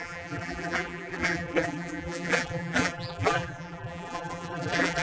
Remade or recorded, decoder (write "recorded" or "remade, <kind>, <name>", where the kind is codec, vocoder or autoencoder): remade, vocoder, BigVGAN v2